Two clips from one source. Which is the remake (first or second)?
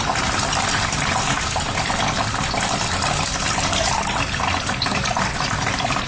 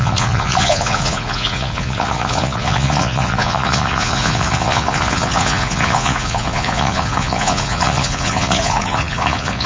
second